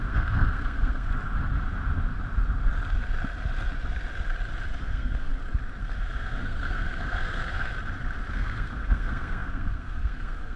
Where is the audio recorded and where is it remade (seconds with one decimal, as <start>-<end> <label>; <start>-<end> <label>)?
0.0-1.1 remade; 1.1-4.8 recorded; 4.8-5.3 remade; 5.3-5.8 recorded; 5.8-7.7 remade; 7.7-8.3 recorded; 8.3-10.6 remade

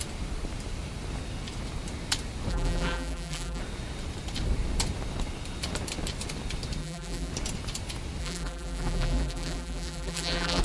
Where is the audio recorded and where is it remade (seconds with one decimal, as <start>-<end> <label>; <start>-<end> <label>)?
0.0-2.5 recorded; 2.5-3.6 remade; 3.6-6.8 recorded; 6.8-7.3 remade; 7.3-8.2 recorded; 8.2-10.6 remade

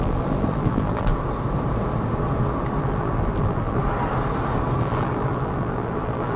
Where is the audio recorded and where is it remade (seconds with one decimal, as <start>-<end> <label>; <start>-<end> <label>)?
0.0-1.1 remade; 1.1-2.8 recorded; 2.8-3.8 remade; 3.8-4.8 recorded; 4.8-6.4 remade

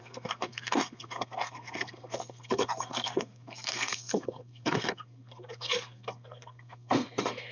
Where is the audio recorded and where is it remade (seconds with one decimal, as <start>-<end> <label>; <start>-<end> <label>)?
0.0-7.5 remade